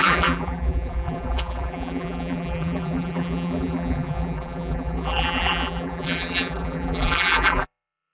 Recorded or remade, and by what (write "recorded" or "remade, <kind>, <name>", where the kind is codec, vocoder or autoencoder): remade, vocoder, BigVGAN v2